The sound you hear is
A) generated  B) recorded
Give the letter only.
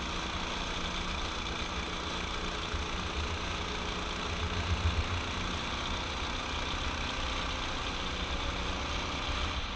B